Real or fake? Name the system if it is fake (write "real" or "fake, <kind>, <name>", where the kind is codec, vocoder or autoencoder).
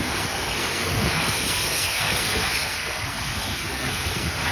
fake, codec, SNAC